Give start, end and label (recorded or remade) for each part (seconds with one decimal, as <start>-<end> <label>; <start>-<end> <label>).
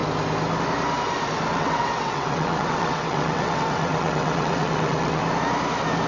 0.0-1.5 recorded; 1.5-5.2 remade; 5.2-6.1 recorded